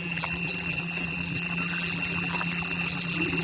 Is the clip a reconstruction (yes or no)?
yes